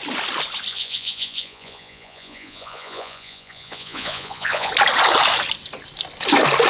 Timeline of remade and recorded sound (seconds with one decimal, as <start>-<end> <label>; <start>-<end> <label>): 0.0-0.7 recorded; 0.7-4.7 remade; 4.7-6.7 recorded